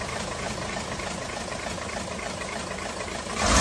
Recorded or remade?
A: recorded